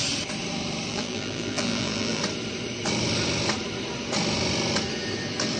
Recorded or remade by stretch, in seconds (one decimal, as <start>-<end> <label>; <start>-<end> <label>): 0.0-0.9 recorded; 0.9-2.2 remade; 2.2-5.6 recorded